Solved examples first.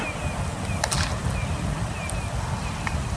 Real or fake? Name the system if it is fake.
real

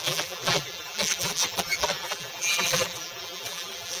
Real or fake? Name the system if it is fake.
fake, vocoder, BigVGAN v2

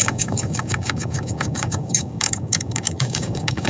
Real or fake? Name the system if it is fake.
fake, codec, DAC